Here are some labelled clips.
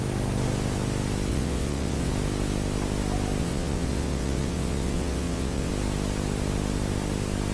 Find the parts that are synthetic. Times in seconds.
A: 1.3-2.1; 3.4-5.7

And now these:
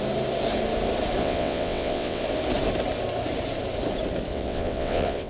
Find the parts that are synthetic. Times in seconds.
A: 1.2-2.2; 4.3-5.3

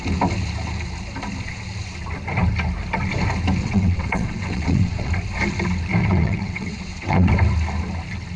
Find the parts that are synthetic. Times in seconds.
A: 3.6-5.1; 6.0-7.3

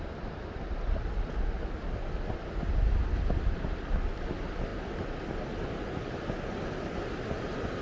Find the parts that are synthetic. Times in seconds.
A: none